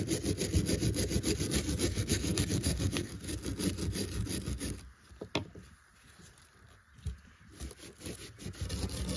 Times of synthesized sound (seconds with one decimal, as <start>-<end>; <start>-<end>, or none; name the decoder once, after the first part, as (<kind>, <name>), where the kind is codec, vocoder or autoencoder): 1.9-3.1 (codec, SNAC)